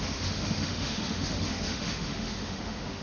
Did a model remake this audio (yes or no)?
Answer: yes